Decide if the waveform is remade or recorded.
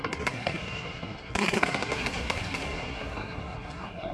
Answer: remade